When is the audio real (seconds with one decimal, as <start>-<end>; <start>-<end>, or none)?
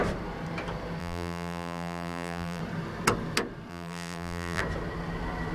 0.0-1.0; 2.6-3.7; 4.6-5.5